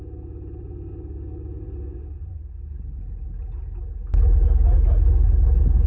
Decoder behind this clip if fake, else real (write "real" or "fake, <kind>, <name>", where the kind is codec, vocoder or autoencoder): real